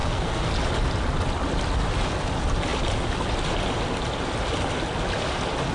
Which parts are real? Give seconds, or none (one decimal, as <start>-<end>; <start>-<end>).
0.5-5.7